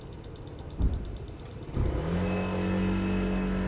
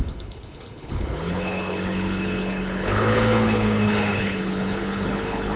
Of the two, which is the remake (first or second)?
second